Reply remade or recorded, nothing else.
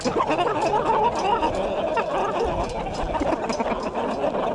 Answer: recorded